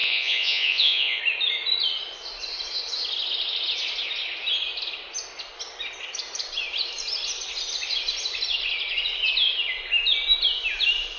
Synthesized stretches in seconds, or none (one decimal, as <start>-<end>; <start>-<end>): 0.0-1.2